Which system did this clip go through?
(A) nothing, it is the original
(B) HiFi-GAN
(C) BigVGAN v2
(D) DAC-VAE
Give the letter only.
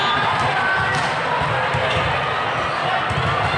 A